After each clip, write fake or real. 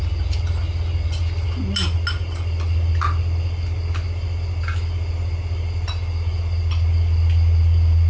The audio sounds real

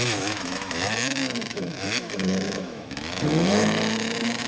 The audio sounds fake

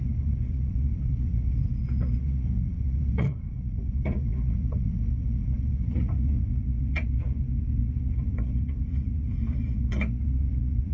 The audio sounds fake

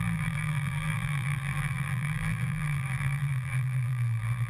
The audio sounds fake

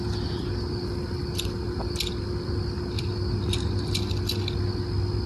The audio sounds real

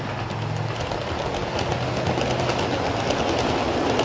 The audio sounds real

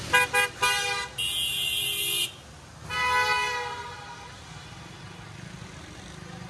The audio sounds real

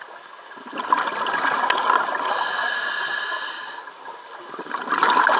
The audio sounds real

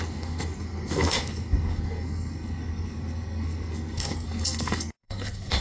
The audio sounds fake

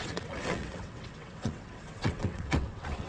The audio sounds fake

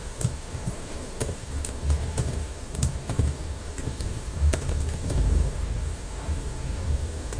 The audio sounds fake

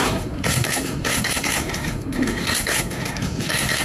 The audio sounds fake